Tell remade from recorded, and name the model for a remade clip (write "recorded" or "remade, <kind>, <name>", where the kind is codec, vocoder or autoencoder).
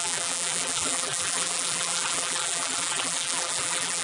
remade, vocoder, BigVGAN v2